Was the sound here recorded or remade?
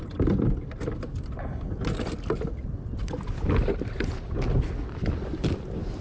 recorded